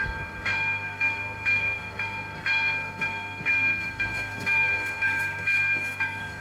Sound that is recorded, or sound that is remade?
remade